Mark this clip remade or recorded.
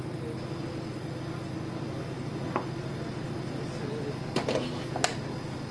recorded